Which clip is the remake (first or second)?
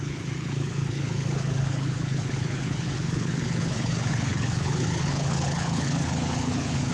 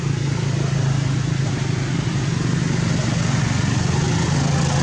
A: first